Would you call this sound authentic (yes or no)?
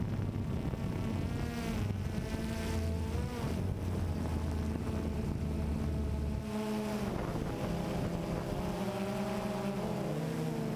yes